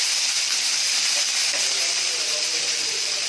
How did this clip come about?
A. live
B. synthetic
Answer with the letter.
A